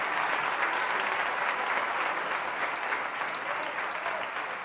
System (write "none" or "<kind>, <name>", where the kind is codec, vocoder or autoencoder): none